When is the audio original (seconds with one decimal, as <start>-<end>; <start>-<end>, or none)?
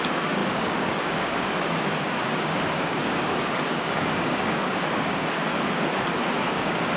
5.4-6.4